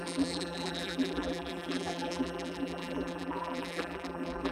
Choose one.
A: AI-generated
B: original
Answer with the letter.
A